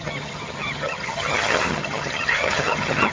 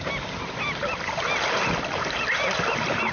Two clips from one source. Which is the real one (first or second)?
second